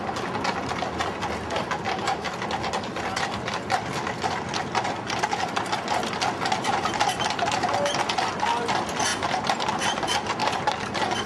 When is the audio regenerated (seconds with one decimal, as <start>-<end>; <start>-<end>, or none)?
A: none